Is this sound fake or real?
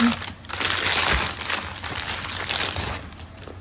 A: real